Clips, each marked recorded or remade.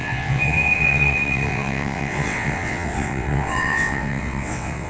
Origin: remade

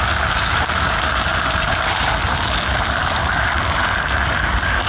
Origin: recorded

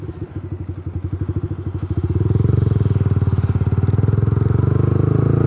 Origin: recorded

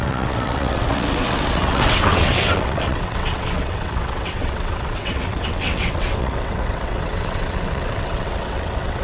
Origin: remade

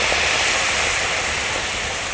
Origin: recorded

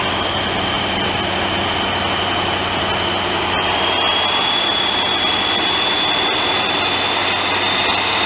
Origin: recorded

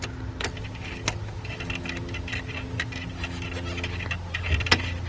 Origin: recorded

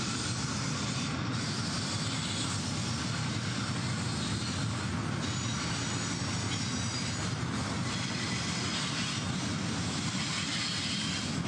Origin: recorded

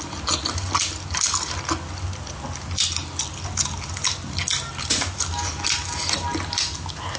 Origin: recorded